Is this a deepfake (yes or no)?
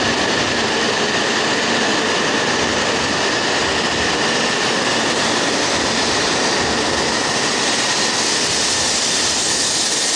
no